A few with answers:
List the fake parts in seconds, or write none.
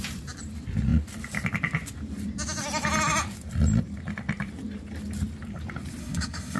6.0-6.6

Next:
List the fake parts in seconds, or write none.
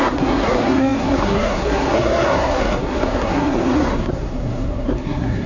0.0-5.5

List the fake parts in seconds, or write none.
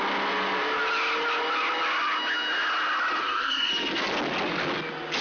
3.2-3.7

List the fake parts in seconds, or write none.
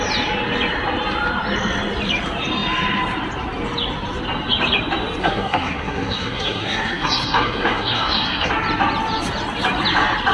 5.2-8.5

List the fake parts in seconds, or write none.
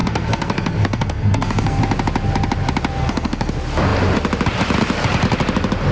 0.0-1.8; 3.0-3.5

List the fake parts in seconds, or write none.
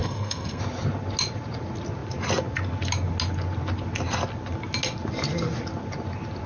0.0-0.6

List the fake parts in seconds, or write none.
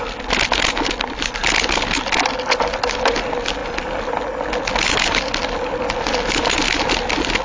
none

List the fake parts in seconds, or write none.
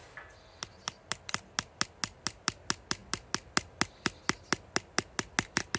none